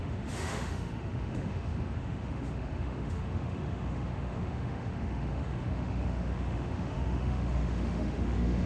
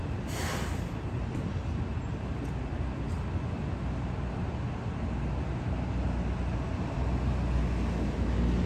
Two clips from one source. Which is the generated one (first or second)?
first